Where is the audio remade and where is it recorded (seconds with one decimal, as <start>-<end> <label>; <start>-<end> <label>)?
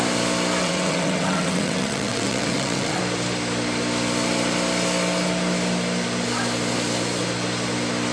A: 0.0-0.6 recorded; 0.6-3.0 remade; 3.0-8.1 recorded